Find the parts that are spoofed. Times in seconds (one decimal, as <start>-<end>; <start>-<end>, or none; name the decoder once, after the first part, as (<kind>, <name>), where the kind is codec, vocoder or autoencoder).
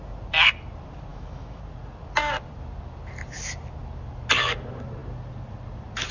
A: 1.1-1.6 (autoencoder, DAC-VAE)